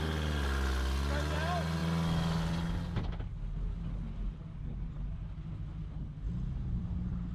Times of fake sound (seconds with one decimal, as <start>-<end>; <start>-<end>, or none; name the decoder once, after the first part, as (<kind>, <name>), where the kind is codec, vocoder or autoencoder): none